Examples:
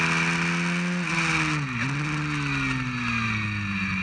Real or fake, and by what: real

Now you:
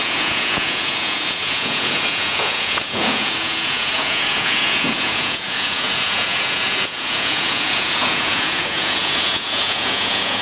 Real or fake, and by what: fake, vocoder, Vocos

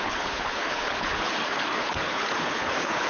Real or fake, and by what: fake, codec, HILCodec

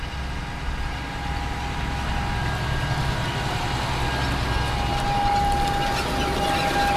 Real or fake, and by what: real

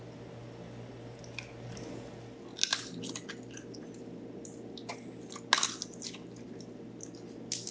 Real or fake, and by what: real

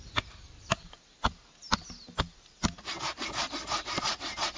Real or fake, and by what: real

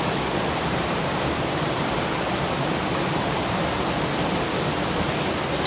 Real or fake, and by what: real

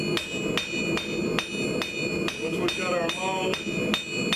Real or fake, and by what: real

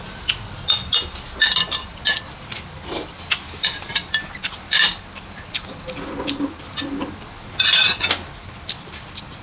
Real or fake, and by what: real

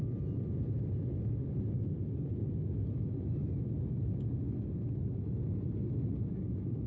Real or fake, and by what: real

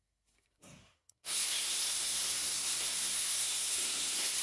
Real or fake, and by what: fake, codec, SNAC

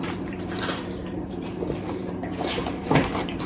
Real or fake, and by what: fake, vocoder, BigVGAN v2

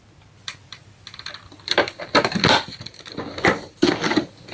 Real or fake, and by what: fake, vocoder, BigVGAN v2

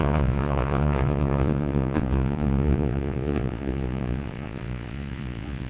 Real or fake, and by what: fake, vocoder, Vocos